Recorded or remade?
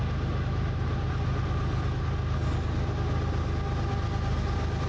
recorded